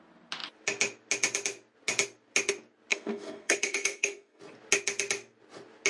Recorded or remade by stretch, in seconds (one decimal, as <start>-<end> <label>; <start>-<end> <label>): 0.0-2.9 recorded; 2.9-4.4 remade; 4.4-5.9 recorded